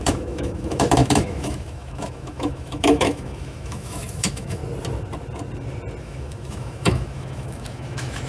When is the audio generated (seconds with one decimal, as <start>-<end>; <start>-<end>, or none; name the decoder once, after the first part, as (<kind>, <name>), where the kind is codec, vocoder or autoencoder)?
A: 0.0-4.6 (autoencoder, DAC-VAE); 6.0-8.3